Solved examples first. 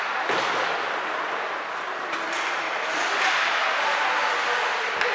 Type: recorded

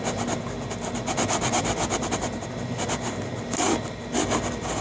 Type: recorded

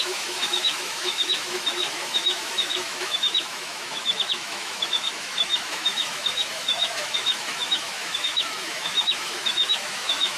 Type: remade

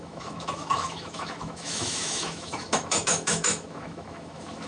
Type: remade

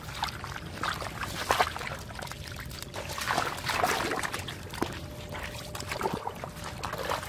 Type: recorded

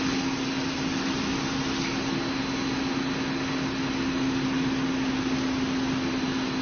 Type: recorded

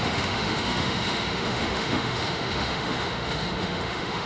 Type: remade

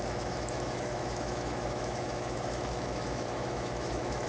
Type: remade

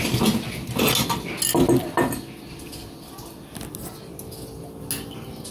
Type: recorded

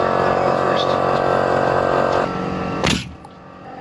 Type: recorded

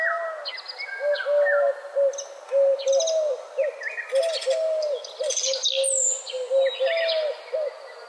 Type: recorded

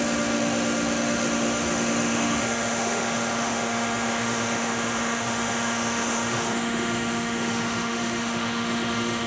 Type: remade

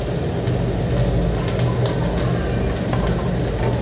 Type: recorded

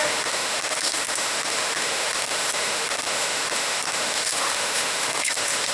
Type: remade